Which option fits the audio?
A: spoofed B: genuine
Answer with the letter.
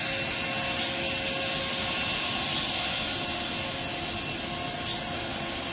B